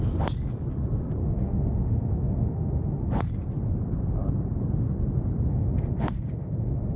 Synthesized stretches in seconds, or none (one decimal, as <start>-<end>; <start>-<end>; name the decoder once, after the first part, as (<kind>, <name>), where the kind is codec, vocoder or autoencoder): 1.2-3.1 (autoencoder, DAC-VAE); 5.5-7.0